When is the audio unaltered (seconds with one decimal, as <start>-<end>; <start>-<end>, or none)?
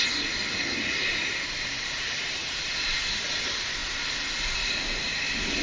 0.0-1.1; 3.2-5.6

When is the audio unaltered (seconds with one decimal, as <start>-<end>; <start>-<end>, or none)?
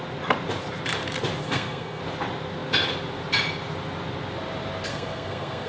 0.0-1.4; 2.0-4.9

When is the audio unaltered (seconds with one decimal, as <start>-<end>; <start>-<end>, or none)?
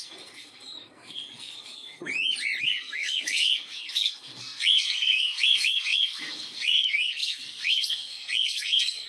2.1-2.6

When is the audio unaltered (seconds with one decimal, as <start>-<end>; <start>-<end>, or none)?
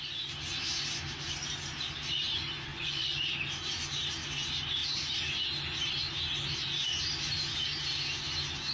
0.0-2.7; 3.2-8.7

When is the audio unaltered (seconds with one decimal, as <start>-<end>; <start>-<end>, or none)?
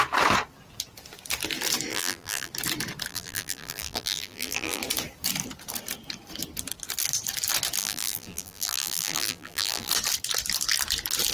0.0-1.9; 2.5-3.1; 4.8-7.8; 9.9-11.3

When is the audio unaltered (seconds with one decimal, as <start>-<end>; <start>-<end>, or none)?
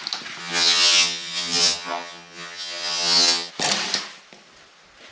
0.0-0.4; 3.5-5.1